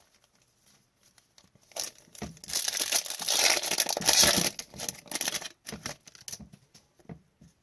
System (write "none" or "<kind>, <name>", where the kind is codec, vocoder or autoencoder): none